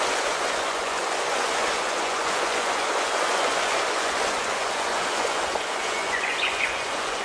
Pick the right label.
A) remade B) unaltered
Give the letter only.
A